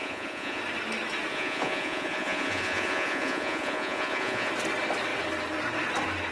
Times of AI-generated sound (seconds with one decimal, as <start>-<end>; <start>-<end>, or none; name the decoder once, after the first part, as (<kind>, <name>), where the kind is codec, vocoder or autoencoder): 0.0-0.6 (vocoder, Vocos); 1.3-4.5